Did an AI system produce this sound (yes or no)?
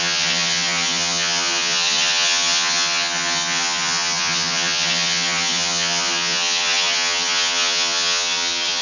yes